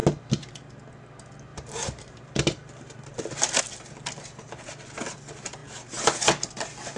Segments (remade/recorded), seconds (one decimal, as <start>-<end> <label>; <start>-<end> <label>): 0.0-1.5 recorded; 1.5-3.6 remade; 3.6-7.0 recorded